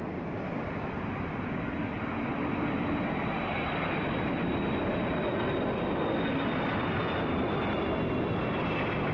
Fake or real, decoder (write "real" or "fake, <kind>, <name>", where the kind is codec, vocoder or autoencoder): real